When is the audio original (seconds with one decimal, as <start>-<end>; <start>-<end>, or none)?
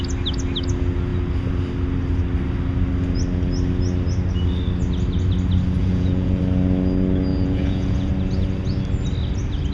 0.0-5.8; 6.4-7.3; 8.1-9.7